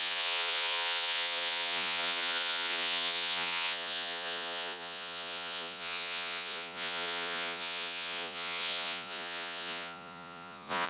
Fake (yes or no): yes